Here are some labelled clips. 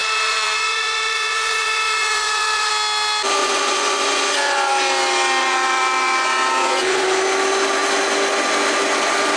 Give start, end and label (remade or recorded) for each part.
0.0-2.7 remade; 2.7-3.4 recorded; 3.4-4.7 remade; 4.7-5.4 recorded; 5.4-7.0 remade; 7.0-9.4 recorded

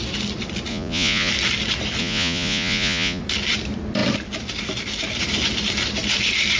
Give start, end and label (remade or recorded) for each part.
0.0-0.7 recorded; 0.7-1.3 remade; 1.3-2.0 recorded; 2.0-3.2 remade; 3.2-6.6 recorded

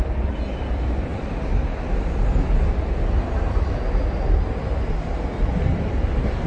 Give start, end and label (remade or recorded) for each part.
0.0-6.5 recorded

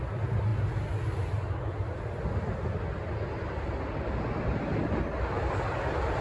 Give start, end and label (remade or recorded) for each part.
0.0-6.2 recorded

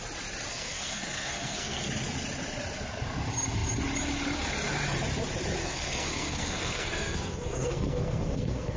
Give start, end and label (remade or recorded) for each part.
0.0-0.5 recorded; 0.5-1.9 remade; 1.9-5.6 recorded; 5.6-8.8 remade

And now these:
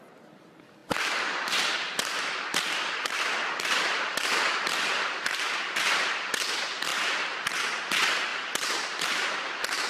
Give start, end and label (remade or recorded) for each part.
0.0-9.9 recorded

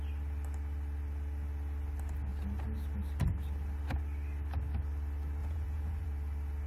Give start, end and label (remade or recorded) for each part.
0.0-5.4 recorded; 5.4-6.1 remade; 6.1-6.7 recorded

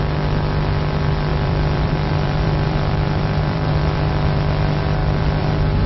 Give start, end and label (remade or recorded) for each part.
0.0-1.3 recorded; 1.3-4.1 remade; 4.1-5.0 recorded; 5.0-5.5 remade; 5.5-5.9 recorded